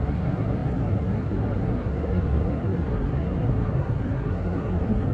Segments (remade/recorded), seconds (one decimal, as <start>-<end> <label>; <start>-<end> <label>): 0.0-5.1 remade